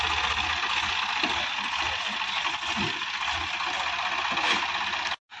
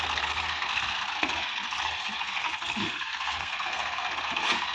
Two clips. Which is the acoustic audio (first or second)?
first